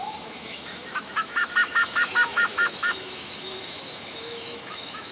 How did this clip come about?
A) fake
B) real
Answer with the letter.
A